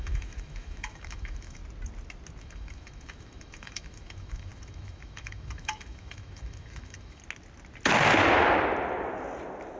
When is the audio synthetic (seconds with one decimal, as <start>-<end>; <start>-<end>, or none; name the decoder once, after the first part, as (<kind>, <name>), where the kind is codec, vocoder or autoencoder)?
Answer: 0.0-1.6 (autoencoder, DAC-VAE); 2.4-7.2

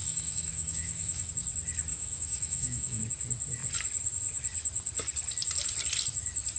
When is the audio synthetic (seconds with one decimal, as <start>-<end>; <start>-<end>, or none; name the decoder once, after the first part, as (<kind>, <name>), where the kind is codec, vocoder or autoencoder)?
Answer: 0.0-1.3 (autoencoder, DAC-VAE); 1.9-3.0

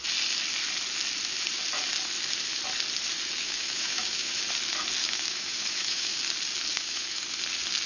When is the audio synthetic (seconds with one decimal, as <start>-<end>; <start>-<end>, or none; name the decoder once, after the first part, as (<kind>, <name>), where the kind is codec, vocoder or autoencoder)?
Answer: 3.4-4.4 (autoencoder, DAC-VAE); 5.0-6.2; 6.7-7.2

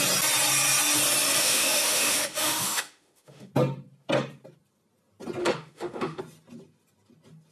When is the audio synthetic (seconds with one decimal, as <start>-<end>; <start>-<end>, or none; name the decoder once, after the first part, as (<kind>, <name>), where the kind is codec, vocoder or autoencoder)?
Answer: 1.4-3.5 (autoencoder, DAC-VAE); 5.4-6.2

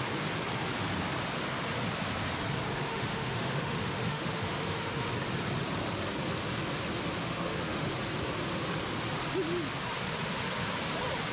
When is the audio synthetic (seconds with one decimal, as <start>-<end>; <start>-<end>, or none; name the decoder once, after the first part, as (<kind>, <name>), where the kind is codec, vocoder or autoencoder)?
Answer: 2.9-5.1 (autoencoder, DAC-VAE); 7.2-7.9